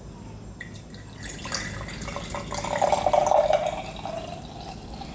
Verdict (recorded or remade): recorded